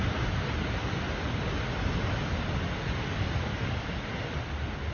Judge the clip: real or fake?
real